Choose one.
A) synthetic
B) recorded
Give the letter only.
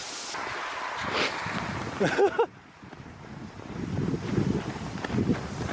B